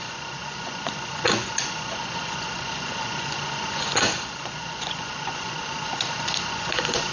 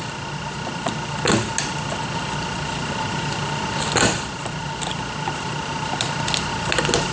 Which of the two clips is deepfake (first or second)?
first